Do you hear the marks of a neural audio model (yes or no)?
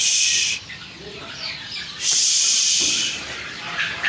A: no